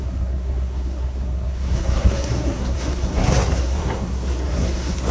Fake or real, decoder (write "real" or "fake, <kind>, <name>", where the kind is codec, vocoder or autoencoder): fake, codec, SNAC